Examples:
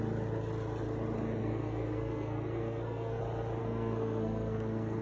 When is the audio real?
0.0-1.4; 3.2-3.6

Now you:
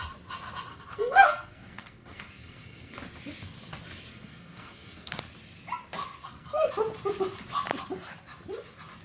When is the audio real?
0.0-0.7; 3.0-4.1; 5.1-6.2; 6.7-9.0

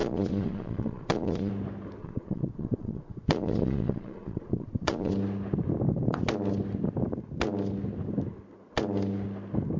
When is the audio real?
1.5-2.0; 5.1-9.8